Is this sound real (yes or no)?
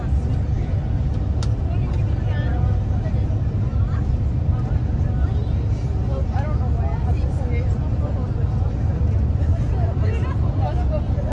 yes